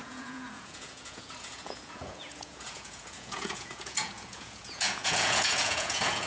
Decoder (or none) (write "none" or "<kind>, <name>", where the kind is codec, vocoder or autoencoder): vocoder, Vocos